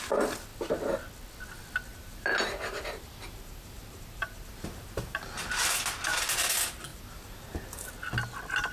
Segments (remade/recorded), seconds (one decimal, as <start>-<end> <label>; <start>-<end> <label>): 0.0-1.9 recorded; 1.9-5.4 remade; 5.4-6.9 recorded; 6.9-7.9 remade; 7.9-8.7 recorded